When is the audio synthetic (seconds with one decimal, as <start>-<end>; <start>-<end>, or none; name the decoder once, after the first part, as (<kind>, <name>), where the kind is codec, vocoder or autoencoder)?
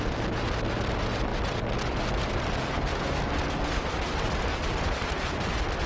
1.3-2.1 (vocoder, BigVGAN v2); 4.5-5.5